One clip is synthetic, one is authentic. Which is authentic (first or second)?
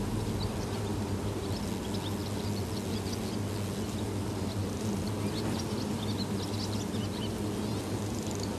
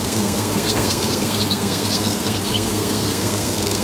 first